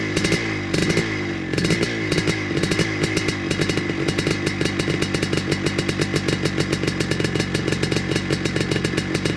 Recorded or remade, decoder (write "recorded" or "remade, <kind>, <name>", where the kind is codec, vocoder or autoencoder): recorded